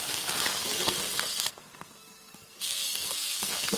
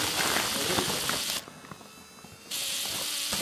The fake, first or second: first